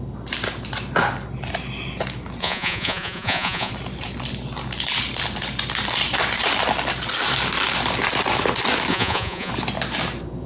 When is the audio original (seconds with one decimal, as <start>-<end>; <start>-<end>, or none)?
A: 0.0-2.4; 3.7-8.9; 9.5-10.5